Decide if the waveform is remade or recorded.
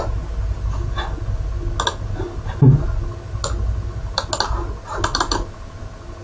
recorded